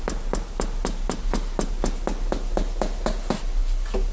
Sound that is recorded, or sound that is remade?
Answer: recorded